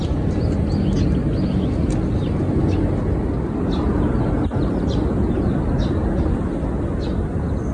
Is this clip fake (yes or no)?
no